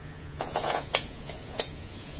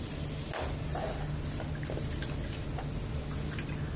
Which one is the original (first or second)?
second